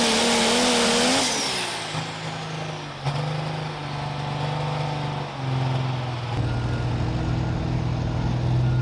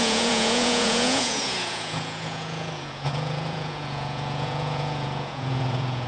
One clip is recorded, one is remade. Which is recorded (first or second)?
first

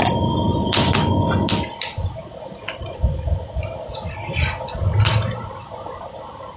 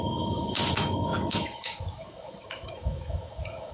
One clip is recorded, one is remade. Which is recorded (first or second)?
first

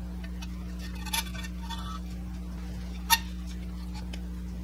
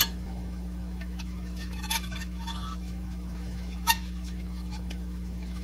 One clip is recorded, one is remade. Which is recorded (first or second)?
first